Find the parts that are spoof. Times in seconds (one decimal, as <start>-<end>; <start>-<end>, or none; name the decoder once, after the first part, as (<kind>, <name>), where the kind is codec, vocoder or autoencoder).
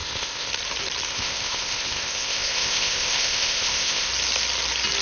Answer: 0.0-0.5 (codec, ZipCodec); 1.1-4.1